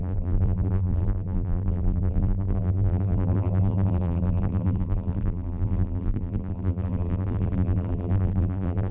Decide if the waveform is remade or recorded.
remade